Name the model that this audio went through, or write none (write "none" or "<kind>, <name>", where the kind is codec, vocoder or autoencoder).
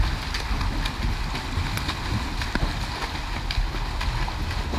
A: none